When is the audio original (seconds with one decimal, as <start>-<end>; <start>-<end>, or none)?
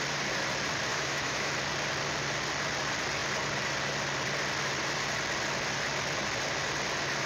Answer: 0.0-0.9; 1.5-7.3